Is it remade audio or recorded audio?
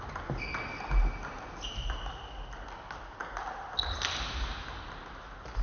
recorded